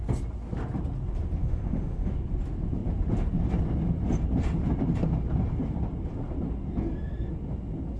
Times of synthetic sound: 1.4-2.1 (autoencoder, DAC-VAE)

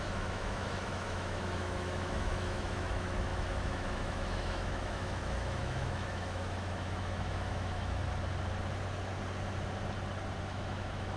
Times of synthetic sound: 0.0-8.0 (autoencoder, DAC-VAE); 10.4-11.2